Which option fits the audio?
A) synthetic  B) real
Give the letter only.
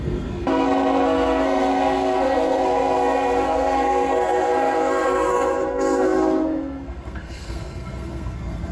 A